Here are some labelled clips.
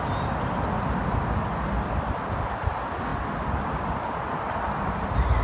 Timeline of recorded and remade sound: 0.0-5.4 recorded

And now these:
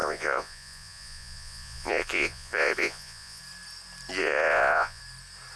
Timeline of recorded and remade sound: 0.0-3.4 remade; 3.4-4.2 recorded; 4.2-5.0 remade; 5.0-5.6 recorded

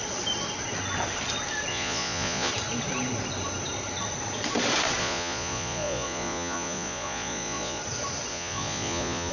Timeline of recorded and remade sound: 0.0-1.7 recorded; 1.7-2.5 remade; 2.5-5.0 recorded; 5.0-7.8 remade; 7.8-8.3 recorded; 8.3-9.3 remade

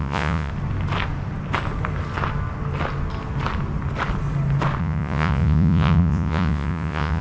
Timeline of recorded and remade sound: 0.0-0.5 remade; 0.5-4.8 recorded; 4.8-7.2 remade

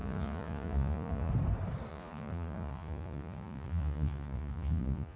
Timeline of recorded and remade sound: 0.0-1.3 remade; 1.3-1.9 recorded; 1.9-5.2 remade

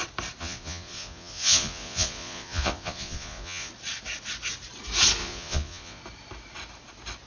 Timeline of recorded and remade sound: 0.0-0.4 recorded; 0.4-3.7 remade; 3.7-5.2 recorded; 5.2-6.0 remade; 6.0-7.3 recorded